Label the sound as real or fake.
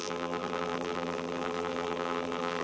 fake